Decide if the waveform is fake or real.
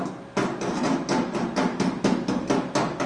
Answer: real